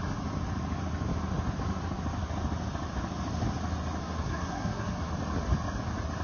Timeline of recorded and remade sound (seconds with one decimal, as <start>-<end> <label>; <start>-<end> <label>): 0.0-4.0 recorded; 4.0-5.1 remade; 5.1-6.2 recorded